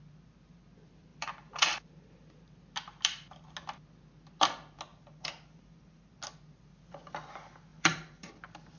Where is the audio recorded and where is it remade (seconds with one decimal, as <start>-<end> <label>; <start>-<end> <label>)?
0.0-1.1 recorded; 1.1-1.9 remade; 1.9-4.9 recorded; 4.9-6.2 remade; 6.2-7.7 recorded; 7.7-8.3 remade; 8.3-8.8 recorded